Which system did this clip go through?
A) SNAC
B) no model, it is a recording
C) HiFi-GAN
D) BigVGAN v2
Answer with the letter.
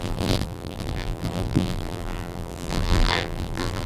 D